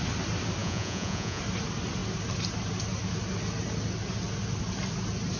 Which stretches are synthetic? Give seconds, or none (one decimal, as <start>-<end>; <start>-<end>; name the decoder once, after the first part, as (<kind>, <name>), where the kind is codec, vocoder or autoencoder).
0.6-1.4 (vocoder, Vocos)